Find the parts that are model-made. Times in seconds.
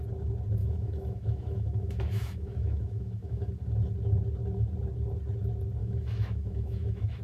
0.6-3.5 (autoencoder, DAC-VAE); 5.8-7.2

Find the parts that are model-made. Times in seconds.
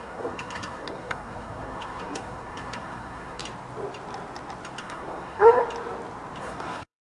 0.0-3.4 (codec, SNAC); 4.8-5.6; 6.4-7.0